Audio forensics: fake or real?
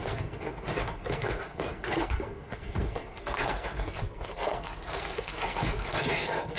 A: fake